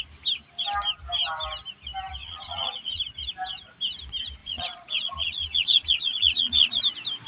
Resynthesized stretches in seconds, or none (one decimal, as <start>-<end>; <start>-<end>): 2.2-3.0; 4.4-6.8